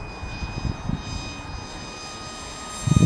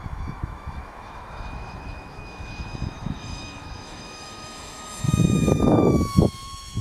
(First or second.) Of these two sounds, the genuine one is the first